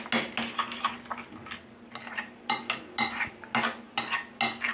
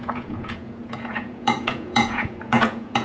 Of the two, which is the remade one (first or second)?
second